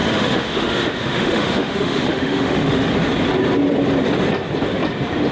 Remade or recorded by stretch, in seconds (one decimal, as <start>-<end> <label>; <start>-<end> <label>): 0.0-2.9 remade; 2.9-5.3 recorded